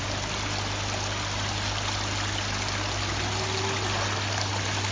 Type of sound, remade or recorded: recorded